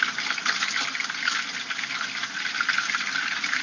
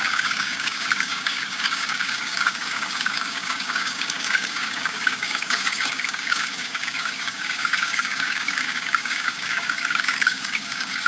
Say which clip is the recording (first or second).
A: first